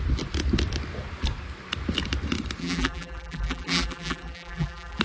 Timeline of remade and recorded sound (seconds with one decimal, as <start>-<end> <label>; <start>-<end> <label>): 0.0-2.6 recorded; 2.6-5.0 remade